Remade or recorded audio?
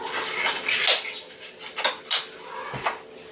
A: recorded